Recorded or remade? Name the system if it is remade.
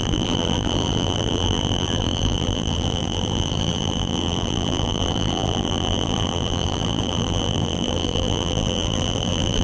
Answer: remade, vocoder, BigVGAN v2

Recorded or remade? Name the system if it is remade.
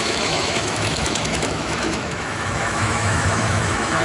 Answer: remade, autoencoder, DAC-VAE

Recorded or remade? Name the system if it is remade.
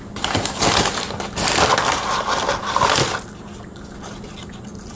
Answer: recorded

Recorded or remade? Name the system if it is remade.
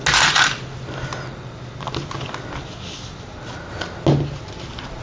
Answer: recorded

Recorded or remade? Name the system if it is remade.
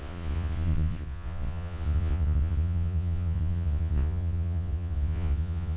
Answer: remade, vocoder, Vocos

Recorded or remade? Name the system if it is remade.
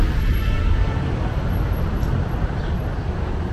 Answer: recorded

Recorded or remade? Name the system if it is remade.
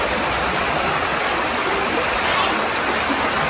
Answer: recorded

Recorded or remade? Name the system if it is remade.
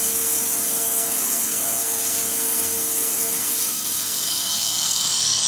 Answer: remade, codec, SNAC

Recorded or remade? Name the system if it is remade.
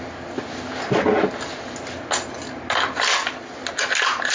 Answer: recorded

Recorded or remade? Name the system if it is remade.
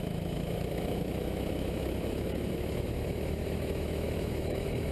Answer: remade, autoencoder, DAC-VAE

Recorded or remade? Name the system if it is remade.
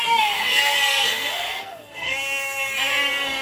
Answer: remade, codec, SNAC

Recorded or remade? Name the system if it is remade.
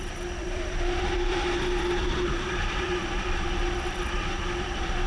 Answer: remade, vocoder, BigVGAN v2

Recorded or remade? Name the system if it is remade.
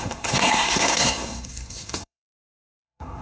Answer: remade, codec, SNAC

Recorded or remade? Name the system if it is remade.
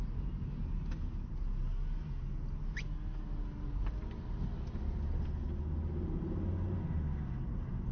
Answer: recorded